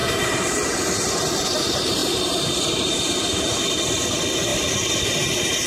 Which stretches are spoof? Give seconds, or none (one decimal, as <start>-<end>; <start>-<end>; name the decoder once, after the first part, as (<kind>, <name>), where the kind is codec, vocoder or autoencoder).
0.0-1.1 (vocoder, BigVGAN v2); 2.0-2.9

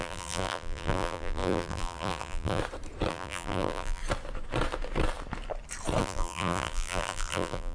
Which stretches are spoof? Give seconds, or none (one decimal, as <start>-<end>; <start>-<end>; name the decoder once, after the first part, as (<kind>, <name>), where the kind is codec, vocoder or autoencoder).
0.0-2.6 (vocoder, BigVGAN v2); 3.1-4.0; 6.0-7.7

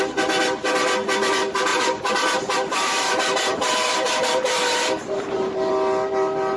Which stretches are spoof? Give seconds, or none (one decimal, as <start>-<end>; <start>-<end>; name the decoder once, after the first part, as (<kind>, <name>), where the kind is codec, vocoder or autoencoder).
1.7-5.7 (vocoder, BigVGAN v2)

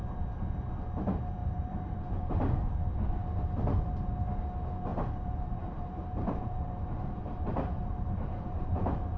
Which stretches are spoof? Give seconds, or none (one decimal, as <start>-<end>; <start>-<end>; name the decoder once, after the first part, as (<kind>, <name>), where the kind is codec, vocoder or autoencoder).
1.4-2.7 (vocoder, BigVGAN v2); 4.9-9.2

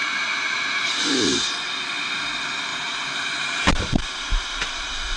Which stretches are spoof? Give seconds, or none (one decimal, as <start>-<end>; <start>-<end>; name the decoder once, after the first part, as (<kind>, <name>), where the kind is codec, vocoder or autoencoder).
0.0-1.5 (vocoder, BigVGAN v2); 2.7-4.8

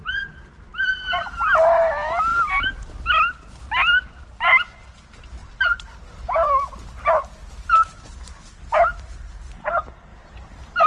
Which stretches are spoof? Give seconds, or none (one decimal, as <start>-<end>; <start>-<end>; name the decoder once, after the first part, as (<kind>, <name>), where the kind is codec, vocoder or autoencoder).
0.0-0.5 (vocoder, BigVGAN v2); 10.1-10.9